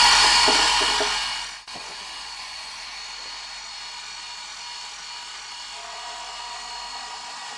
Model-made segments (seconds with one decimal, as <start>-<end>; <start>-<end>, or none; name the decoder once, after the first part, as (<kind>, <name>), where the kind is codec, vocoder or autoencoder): 1.8-2.8 (vocoder, Vocos)